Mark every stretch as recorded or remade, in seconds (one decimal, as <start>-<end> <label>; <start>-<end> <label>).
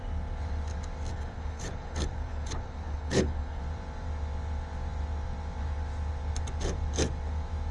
0.0-1.1 recorded; 1.1-3.6 remade; 3.6-7.7 recorded